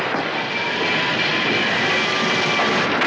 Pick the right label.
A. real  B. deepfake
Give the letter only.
A